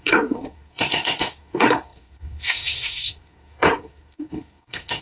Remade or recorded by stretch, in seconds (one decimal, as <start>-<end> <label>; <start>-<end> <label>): 0.0-5.0 remade